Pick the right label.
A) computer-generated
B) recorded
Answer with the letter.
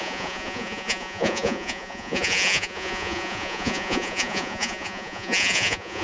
A